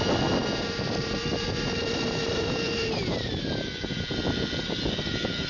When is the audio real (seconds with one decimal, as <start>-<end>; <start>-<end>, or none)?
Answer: 0.0-0.4; 3.7-5.5